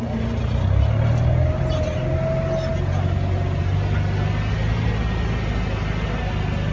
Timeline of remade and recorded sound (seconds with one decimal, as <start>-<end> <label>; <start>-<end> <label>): 0.0-6.7 recorded